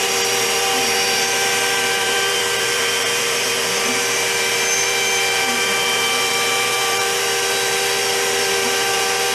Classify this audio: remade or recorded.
remade